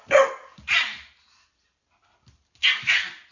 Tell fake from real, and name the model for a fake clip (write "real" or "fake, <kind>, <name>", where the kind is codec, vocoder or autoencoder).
real